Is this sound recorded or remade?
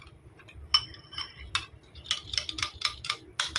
remade